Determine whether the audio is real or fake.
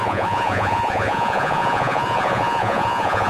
fake